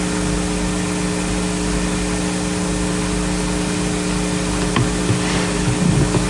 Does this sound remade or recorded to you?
recorded